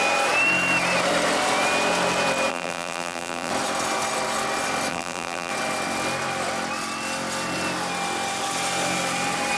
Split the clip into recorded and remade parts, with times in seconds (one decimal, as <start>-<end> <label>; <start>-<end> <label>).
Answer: 0.0-2.5 recorded; 2.5-3.5 remade; 3.5-4.9 recorded; 4.9-5.5 remade; 5.5-9.6 recorded